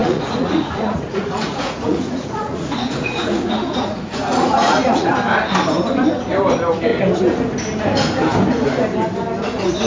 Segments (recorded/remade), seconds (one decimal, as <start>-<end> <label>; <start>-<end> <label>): 0.0-5.1 remade; 5.1-9.9 recorded